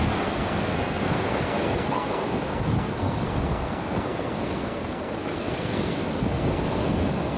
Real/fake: fake